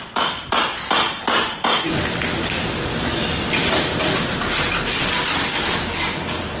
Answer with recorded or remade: recorded